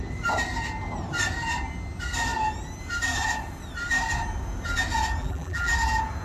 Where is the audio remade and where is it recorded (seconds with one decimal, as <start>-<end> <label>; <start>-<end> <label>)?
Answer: 0.0-5.2 recorded; 5.2-5.7 remade; 5.7-6.2 recorded